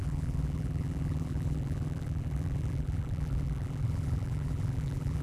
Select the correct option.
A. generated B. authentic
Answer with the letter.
A